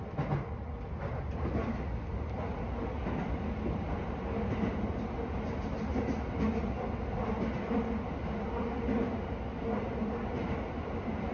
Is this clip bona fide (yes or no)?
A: yes